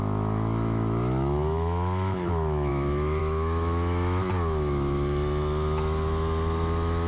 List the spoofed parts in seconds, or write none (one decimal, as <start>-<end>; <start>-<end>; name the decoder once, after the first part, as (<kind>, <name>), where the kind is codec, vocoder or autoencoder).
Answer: 0.0-7.1 (autoencoder, DAC-VAE)